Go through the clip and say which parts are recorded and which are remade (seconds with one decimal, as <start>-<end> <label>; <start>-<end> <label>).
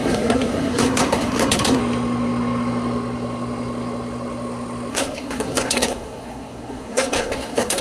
0.0-1.8 remade; 1.8-4.9 recorded; 4.9-7.8 remade